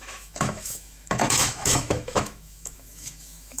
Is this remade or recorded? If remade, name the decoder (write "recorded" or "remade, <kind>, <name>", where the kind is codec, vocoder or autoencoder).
remade, autoencoder, DAC-VAE